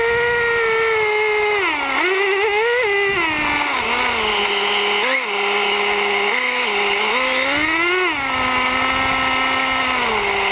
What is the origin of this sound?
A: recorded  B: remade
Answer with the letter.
A